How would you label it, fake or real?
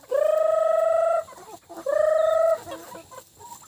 real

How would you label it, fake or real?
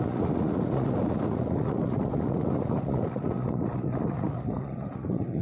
fake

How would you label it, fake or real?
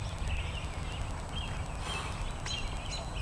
real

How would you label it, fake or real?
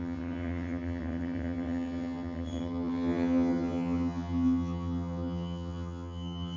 fake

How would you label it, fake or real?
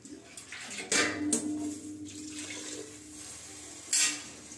real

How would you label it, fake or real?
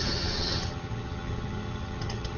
fake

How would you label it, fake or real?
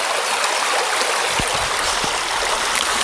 real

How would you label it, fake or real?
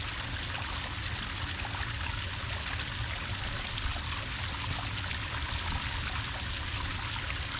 real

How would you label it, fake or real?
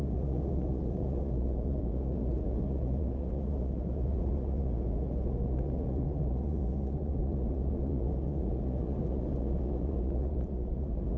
fake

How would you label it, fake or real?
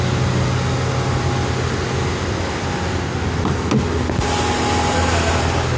real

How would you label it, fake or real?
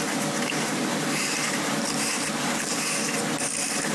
real